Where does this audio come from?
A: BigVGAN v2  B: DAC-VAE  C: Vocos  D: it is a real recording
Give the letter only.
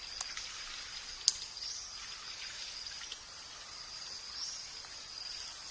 D